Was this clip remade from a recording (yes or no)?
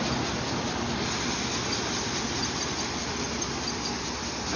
no